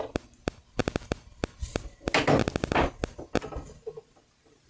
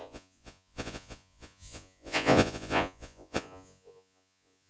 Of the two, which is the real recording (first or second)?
first